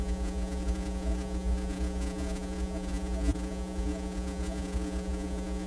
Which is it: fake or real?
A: fake